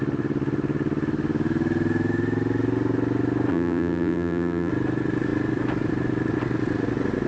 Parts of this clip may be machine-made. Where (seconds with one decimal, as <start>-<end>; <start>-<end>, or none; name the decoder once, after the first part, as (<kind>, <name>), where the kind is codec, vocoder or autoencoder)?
3.5-4.7 (vocoder, BigVGAN v2)